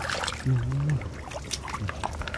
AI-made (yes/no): no